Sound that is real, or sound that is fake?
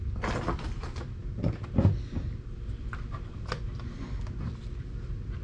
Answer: real